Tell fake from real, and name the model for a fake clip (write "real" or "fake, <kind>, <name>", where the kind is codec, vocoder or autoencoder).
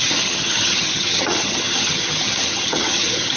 fake, vocoder, HiFi-GAN